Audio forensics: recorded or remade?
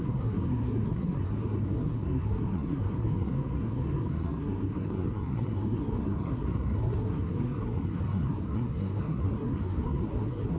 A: remade